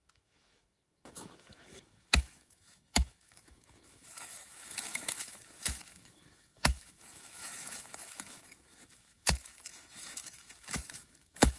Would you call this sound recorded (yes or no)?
no